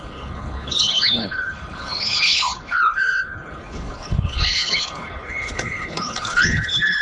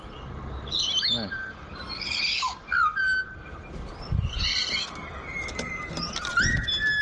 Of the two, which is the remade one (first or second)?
first